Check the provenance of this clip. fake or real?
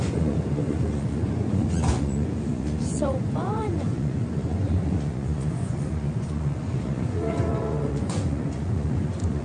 fake